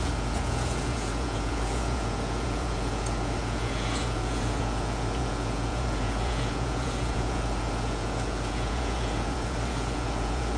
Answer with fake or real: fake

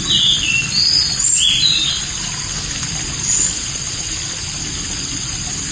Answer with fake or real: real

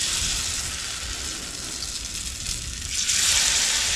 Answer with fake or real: real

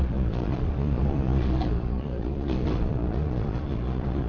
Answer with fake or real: fake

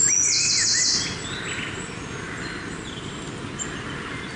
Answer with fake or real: real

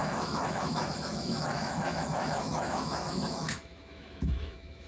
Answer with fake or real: fake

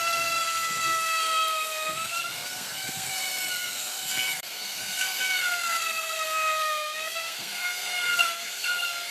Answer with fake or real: fake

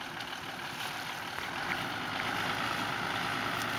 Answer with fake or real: real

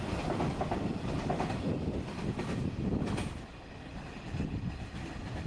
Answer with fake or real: real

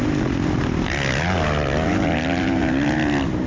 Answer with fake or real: real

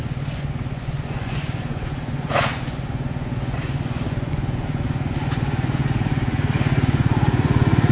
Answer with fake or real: fake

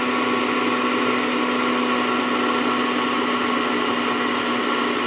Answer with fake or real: real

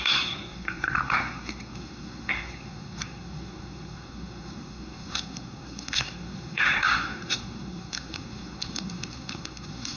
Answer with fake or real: fake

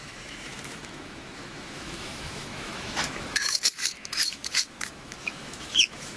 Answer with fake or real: fake